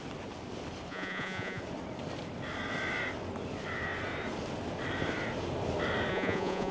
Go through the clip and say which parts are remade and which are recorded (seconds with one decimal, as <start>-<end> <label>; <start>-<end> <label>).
0.0-0.9 recorded; 0.9-1.6 remade; 1.6-6.1 recorded; 6.1-6.7 remade